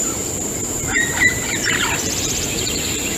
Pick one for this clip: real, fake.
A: fake